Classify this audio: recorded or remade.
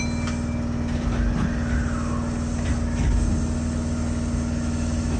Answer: recorded